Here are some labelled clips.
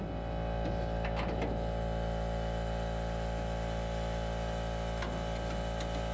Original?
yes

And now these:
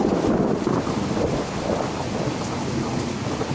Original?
yes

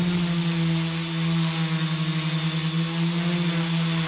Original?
yes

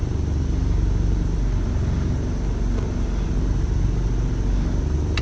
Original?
yes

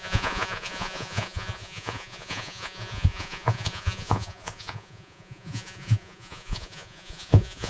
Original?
no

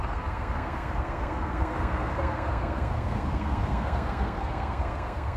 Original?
no